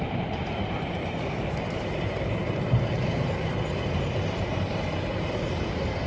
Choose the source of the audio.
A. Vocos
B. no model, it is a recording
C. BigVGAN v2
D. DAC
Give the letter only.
C